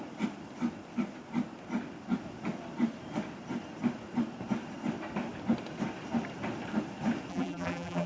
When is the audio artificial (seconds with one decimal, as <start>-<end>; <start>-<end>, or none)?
7.3-8.1